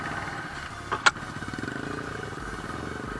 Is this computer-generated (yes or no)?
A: no